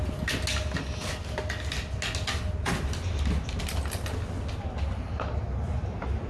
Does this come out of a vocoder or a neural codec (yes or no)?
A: no